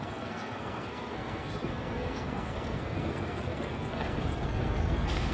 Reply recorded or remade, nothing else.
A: remade